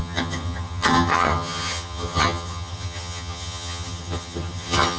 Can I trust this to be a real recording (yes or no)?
no